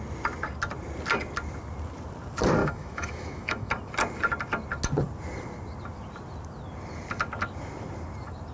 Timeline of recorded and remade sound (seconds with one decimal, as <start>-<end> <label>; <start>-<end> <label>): 0.0-2.6 recorded; 2.6-3.7 remade; 3.7-8.5 recorded